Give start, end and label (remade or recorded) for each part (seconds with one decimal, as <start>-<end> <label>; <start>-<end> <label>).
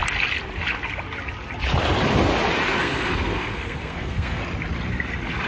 0.0-2.8 recorded; 2.8-4.4 remade; 4.4-5.5 recorded